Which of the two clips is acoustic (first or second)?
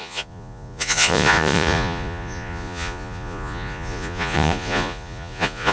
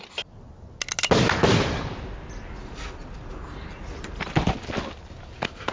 second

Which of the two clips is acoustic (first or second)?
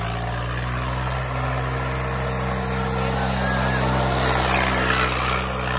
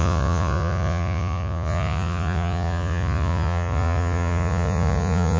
first